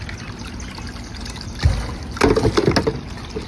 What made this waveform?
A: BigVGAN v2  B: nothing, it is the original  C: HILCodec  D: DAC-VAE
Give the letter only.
B